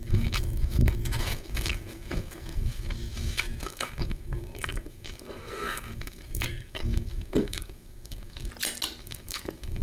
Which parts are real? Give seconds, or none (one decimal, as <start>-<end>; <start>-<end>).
8.5-9.0

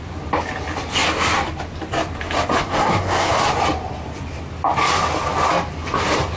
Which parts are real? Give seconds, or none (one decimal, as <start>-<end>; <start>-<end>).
0.0-2.6; 3.3-6.4